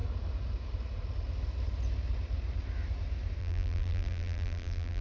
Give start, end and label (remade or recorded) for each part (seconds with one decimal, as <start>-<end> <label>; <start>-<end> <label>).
0.0-3.4 recorded; 3.4-5.0 remade